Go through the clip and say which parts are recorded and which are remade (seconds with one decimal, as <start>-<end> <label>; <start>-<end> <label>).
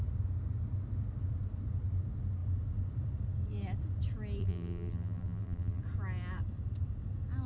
0.0-4.4 recorded; 4.4-5.8 remade; 5.8-7.5 recorded